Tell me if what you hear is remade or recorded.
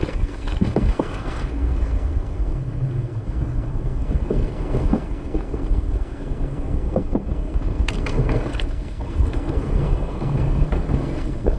remade